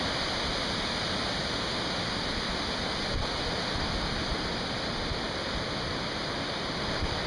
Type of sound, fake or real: real